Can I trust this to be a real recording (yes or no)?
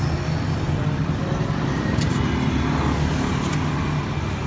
yes